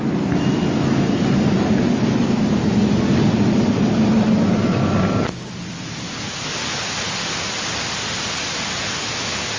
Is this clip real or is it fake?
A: real